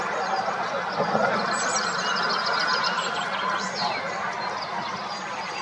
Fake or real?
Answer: real